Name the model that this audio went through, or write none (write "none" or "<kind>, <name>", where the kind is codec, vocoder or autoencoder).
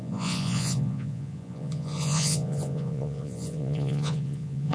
vocoder, Vocos